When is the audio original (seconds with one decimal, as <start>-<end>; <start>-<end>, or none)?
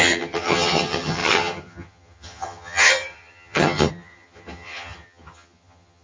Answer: none